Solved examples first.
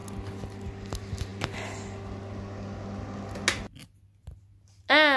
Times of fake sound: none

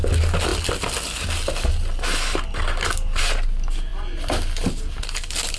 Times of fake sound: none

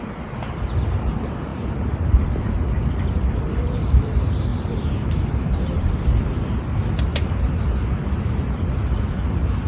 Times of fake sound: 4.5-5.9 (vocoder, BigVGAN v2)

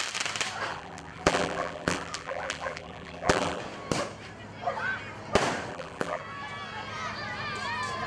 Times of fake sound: 0.7-3.6 (vocoder, BigVGAN v2); 5.7-6.2

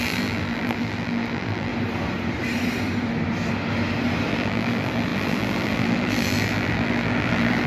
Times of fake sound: 0.0-1.7 (vocoder, BigVGAN v2); 4.3-7.7